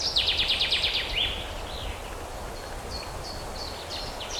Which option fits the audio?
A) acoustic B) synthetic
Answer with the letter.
A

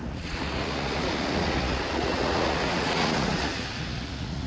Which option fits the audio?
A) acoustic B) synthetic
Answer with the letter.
B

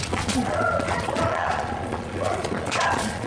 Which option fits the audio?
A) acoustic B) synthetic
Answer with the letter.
B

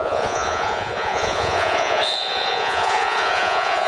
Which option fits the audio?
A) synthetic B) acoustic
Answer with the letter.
A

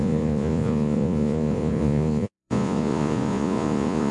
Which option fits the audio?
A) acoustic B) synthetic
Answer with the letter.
B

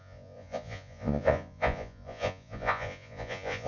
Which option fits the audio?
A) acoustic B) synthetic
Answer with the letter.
B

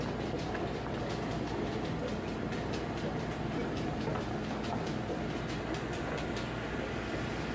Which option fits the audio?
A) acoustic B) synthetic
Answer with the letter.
A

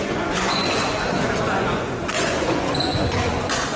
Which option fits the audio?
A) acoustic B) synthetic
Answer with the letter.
B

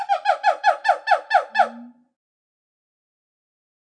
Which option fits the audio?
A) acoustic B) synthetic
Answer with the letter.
A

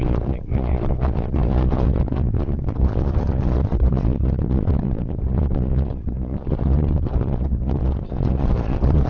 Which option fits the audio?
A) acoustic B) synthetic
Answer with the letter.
B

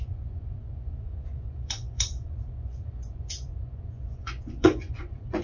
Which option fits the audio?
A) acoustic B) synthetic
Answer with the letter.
B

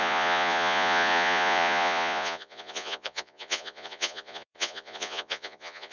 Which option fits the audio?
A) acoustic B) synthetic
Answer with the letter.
B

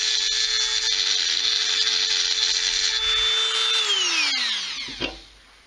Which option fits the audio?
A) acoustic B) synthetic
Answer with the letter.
A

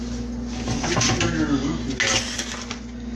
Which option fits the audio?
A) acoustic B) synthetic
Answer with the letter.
A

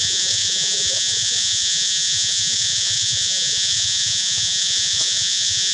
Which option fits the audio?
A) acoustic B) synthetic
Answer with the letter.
B